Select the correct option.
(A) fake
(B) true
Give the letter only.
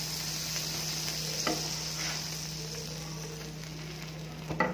B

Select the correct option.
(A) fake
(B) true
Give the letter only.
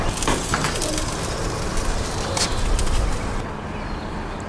B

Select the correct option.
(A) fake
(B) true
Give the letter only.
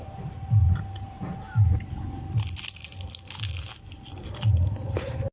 B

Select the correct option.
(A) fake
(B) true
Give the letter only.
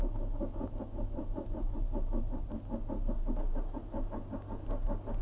B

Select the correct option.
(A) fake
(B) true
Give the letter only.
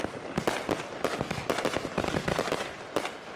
B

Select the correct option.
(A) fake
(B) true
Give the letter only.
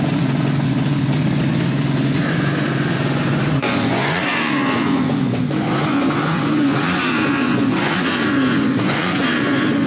A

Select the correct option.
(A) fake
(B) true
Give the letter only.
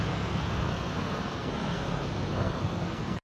A